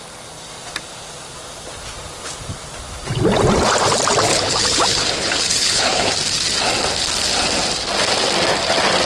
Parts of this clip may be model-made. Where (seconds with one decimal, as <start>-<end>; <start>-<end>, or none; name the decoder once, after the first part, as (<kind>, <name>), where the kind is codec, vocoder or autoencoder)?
4.3-6.1 (codec, HILCodec)